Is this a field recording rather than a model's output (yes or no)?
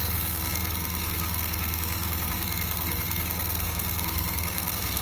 no